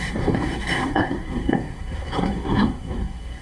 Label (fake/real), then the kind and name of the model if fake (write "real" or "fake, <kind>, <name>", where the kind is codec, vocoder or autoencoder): fake, codec, SNAC